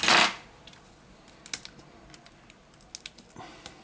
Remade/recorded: recorded